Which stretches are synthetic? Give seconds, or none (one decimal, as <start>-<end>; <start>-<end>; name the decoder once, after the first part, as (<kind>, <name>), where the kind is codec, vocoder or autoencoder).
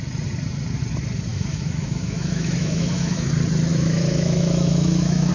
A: 1.3-3.3 (autoencoder, DAC-VAE); 3.7-5.3